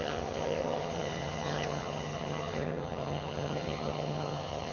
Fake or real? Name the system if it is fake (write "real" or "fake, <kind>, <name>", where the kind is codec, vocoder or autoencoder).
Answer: fake, vocoder, HiFi-GAN